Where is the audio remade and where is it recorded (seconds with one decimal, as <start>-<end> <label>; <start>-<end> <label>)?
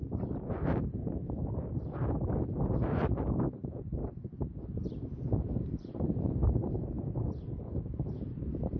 0.0-1.2 remade; 1.2-1.7 recorded; 1.7-4.0 remade; 4.0-4.6 recorded; 4.6-8.8 remade